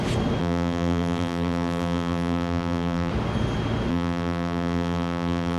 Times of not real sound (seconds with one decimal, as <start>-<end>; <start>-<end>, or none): 0.4-3.1; 3.9-5.6